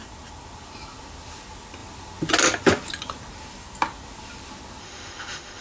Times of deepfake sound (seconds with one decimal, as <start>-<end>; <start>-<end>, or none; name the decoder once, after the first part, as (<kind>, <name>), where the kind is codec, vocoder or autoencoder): 4.8-5.6 (autoencoder, DAC-VAE)